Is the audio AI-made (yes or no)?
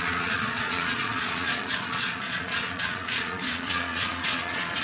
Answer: yes